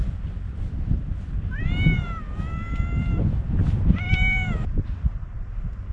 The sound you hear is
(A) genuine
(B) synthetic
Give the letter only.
B